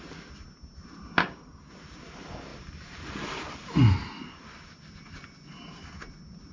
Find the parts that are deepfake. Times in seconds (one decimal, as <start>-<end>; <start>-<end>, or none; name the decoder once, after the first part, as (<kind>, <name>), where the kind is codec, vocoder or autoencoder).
1.2-1.7 (codec, DAC)